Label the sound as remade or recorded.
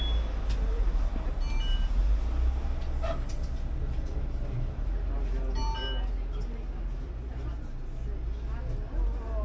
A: recorded